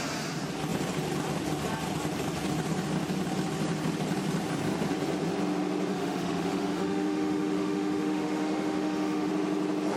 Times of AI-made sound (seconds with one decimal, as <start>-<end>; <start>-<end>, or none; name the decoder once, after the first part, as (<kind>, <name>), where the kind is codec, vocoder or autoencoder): 5.9-9.3 (autoencoder, DAC-VAE)